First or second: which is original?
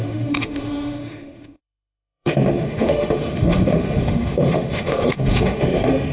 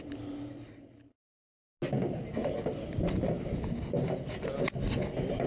second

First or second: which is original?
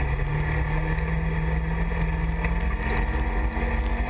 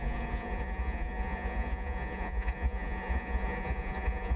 first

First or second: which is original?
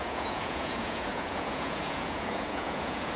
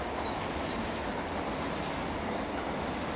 second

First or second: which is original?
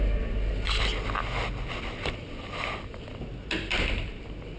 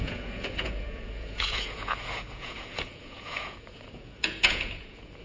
first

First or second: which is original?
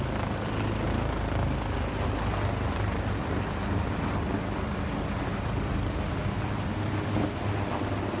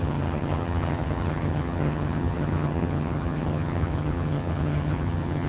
first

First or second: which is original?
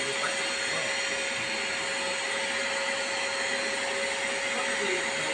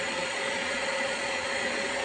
first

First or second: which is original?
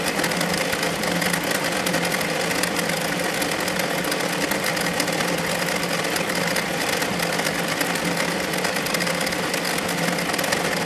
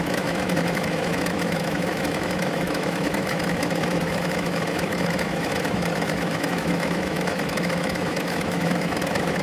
first